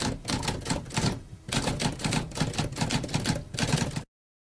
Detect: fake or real real